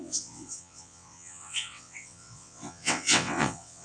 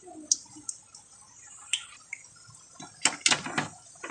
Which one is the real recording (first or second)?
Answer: second